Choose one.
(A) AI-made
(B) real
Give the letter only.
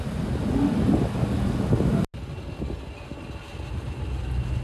B